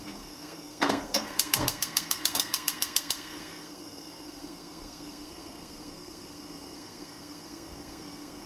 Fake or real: fake